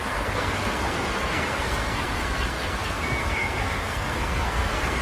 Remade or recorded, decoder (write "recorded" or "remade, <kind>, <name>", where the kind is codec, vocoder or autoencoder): remade, codec, SNAC